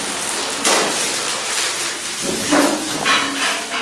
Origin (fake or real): real